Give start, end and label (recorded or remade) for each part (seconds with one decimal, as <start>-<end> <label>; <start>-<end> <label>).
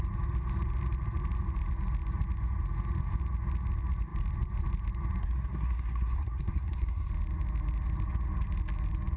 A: 0.0-5.2 recorded; 5.2-7.1 remade; 7.1-9.2 recorded